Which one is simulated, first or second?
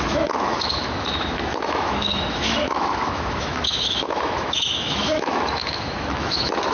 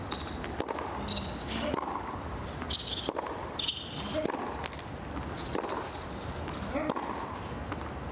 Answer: first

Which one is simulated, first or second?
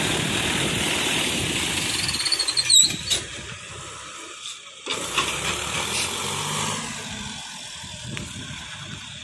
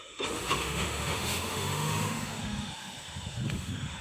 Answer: second